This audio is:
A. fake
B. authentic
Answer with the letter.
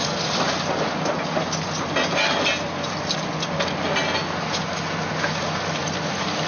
B